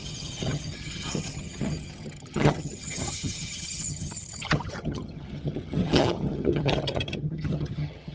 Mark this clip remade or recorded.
remade